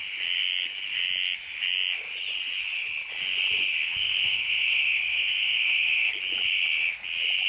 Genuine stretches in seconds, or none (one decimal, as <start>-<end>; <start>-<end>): 0.0-4.0; 6.1-7.5